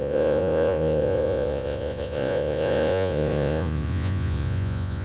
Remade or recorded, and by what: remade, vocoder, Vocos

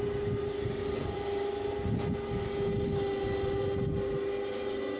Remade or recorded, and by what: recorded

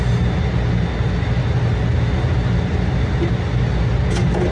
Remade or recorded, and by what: recorded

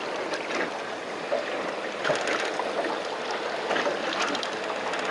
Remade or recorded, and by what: recorded